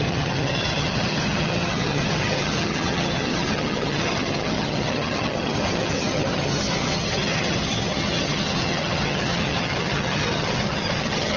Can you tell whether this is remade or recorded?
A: remade